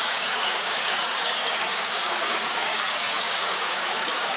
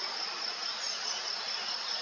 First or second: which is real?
second